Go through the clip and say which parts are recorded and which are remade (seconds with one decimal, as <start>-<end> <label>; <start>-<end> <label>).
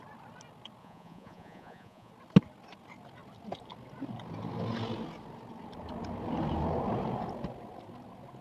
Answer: 0.0-0.8 recorded; 0.8-2.1 remade; 2.1-8.4 recorded